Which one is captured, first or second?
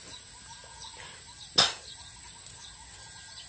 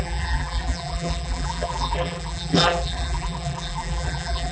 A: first